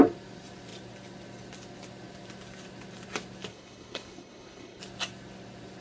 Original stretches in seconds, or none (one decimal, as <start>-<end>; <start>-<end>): 0.0-3.5; 4.8-5.8